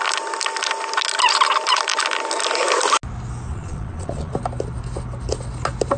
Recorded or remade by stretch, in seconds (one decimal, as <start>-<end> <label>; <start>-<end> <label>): 0.0-3.5 recorded; 3.5-4.3 remade; 4.3-6.0 recorded